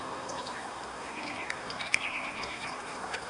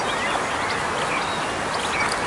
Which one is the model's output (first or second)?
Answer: first